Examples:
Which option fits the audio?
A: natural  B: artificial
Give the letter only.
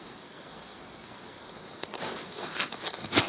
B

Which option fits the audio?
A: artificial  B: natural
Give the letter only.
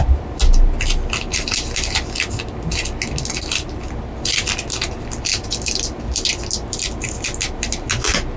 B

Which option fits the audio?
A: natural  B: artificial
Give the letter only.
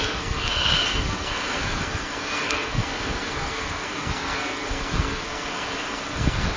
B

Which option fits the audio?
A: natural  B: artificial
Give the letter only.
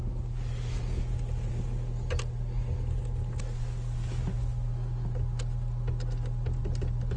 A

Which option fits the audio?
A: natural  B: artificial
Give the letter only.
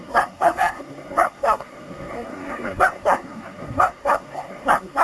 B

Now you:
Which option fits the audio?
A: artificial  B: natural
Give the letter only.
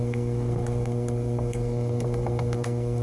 A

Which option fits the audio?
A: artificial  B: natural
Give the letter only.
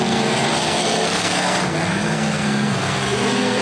A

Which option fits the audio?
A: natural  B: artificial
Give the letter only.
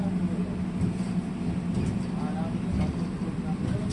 A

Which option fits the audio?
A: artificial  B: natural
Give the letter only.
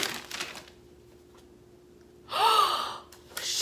B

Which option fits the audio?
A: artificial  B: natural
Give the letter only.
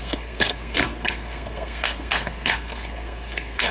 A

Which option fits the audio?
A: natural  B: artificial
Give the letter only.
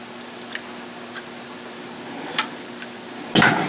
A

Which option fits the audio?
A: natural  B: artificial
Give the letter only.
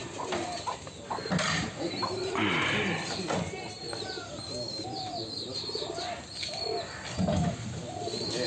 A